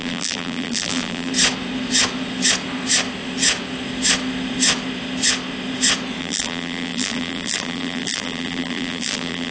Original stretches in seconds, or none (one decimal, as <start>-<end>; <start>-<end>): 1.3-6.2